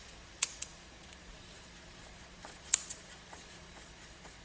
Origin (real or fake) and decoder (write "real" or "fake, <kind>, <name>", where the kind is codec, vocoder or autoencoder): fake, vocoder, Vocos